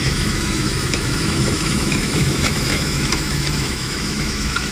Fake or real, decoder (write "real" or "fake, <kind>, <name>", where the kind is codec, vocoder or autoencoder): fake, autoencoder, DAC-VAE